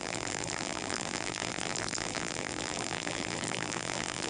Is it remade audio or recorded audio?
remade